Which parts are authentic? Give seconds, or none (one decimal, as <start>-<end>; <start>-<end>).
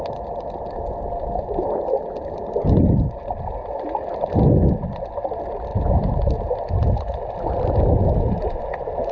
0.0-9.1